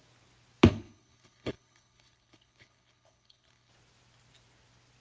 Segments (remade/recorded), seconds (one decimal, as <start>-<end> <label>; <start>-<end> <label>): 0.0-0.7 recorded; 0.7-3.7 remade; 3.7-5.0 recorded